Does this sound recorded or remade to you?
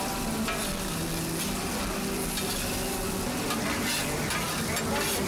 recorded